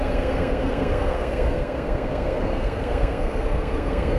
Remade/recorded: remade